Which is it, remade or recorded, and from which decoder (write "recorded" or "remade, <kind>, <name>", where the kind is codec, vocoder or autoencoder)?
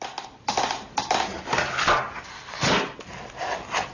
recorded